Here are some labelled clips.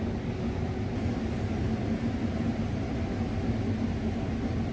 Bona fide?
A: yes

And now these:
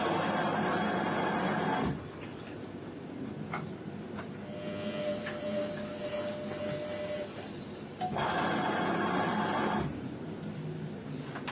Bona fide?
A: yes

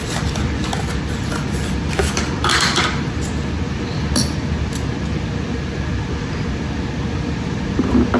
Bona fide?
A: no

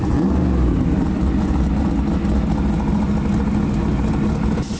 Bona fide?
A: yes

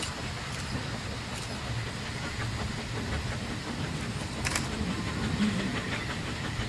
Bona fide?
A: yes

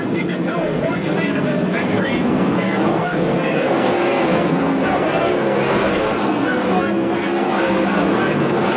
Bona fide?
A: no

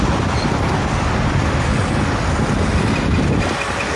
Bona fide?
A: yes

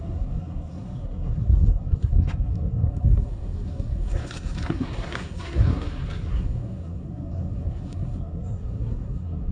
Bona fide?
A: no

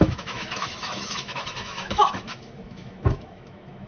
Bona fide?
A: no